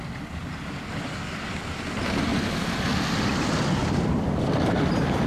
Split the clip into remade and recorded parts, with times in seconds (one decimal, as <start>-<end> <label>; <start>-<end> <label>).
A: 0.0-5.3 recorded